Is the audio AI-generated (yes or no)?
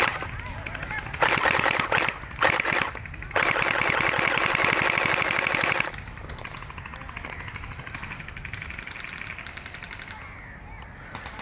no